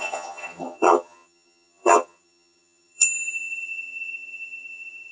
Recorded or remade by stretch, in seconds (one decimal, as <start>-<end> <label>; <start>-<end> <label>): 0.0-5.1 remade